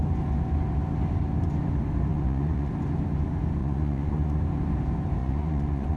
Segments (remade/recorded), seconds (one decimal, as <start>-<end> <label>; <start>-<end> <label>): 0.0-2.1 recorded; 2.1-2.7 remade; 2.7-3.6 recorded; 3.6-4.4 remade; 4.4-5.2 recorded; 5.2-6.0 remade